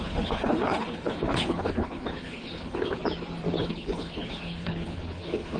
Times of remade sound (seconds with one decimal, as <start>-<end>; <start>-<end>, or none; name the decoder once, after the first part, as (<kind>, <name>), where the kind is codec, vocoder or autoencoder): 0.0-3.0 (codec, HILCodec); 3.6-5.6